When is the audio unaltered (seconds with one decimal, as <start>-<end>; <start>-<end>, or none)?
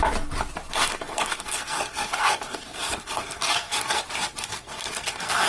0.0-0.7; 4.0-4.5